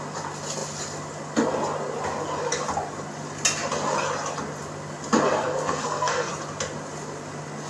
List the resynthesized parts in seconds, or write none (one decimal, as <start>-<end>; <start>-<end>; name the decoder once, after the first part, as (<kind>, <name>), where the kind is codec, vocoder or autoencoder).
5.4-6.3 (codec, SNAC)